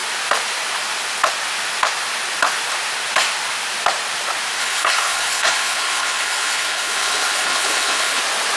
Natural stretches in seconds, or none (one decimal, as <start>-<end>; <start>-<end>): 0.0-4.6; 8.2-8.6